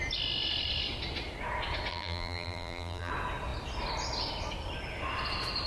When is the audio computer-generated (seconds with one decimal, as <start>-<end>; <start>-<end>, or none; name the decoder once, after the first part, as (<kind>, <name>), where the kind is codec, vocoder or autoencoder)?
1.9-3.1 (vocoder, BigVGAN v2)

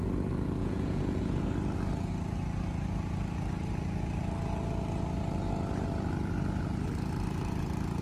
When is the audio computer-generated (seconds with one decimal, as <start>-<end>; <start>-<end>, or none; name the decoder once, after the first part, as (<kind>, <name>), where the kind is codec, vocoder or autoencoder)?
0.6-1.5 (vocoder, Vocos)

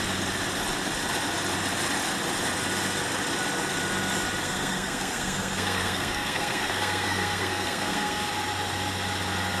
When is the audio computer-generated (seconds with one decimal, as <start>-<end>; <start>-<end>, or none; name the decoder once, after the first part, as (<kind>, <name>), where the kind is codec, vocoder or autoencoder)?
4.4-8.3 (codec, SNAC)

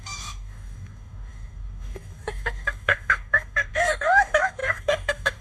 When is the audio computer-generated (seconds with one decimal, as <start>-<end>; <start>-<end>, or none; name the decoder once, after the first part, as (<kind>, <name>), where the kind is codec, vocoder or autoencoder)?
0.0-5.4 (codec, DAC)

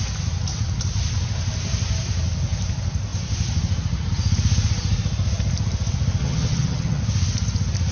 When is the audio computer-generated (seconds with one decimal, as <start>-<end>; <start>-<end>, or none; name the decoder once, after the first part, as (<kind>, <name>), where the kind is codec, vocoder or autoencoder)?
6.2-7.0 (vocoder, HiFi-GAN)